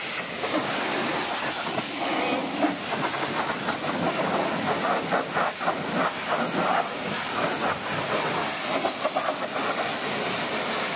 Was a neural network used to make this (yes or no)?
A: no